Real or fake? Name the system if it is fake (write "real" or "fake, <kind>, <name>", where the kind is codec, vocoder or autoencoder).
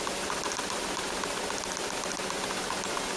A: real